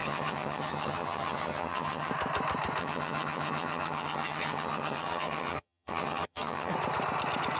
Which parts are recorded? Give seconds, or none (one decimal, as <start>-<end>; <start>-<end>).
2.1-2.8; 6.7-7.6